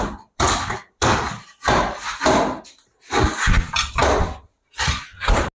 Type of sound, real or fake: real